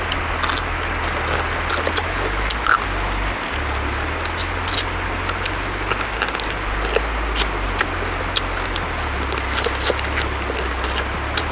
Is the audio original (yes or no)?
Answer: yes